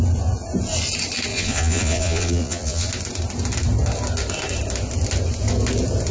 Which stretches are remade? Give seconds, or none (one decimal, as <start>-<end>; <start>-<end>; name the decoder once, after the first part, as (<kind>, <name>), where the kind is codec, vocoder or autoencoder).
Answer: 1.3-2.9 (vocoder, Vocos)